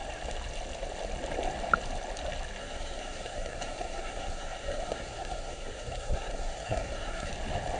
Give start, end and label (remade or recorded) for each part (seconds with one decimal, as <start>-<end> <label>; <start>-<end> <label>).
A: 0.0-2.6 recorded; 2.6-7.3 remade; 7.3-7.8 recorded